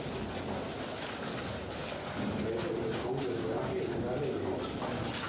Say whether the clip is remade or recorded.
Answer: recorded